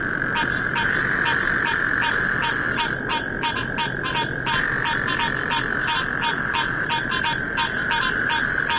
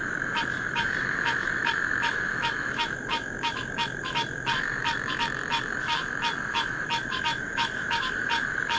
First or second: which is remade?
second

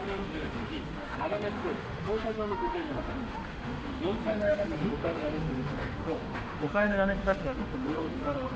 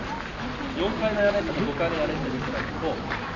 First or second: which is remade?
first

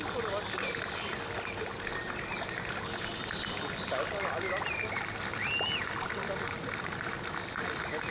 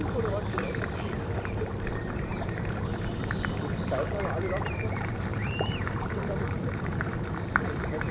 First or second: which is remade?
second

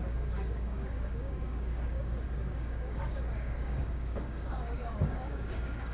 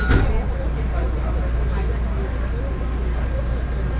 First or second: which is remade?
first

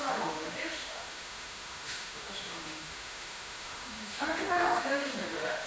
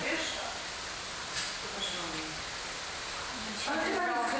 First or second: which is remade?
first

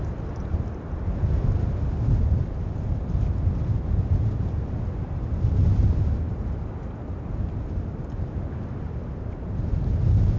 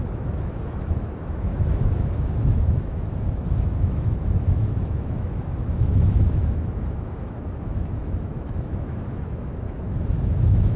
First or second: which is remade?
second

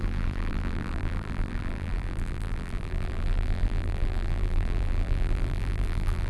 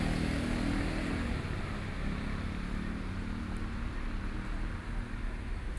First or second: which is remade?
first